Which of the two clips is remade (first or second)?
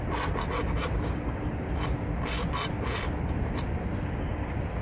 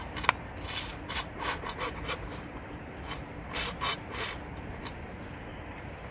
second